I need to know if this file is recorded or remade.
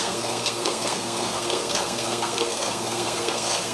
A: remade